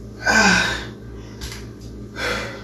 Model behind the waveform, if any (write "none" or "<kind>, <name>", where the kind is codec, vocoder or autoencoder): none